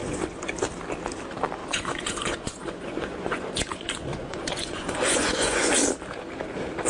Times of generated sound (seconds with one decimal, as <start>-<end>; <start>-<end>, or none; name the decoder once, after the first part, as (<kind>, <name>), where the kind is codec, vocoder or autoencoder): 0.0-0.5 (vocoder, Vocos); 1.6-5.7